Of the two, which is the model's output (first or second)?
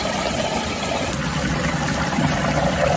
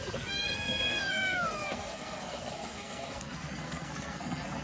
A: second